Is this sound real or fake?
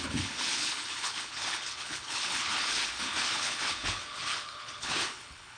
fake